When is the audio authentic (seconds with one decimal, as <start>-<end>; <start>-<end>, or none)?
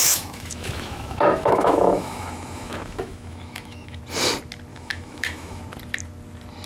4.0-4.7; 5.6-6.7